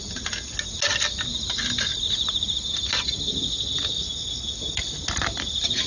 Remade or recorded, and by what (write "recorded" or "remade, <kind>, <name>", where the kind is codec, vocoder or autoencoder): recorded